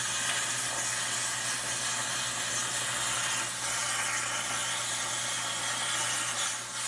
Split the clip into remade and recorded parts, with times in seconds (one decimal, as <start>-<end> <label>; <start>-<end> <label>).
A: 0.0-6.9 recorded